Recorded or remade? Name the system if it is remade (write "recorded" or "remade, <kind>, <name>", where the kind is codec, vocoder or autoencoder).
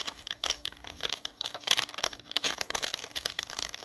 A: remade, codec, DAC